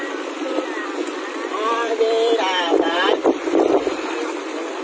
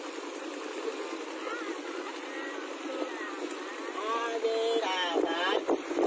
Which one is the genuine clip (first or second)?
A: second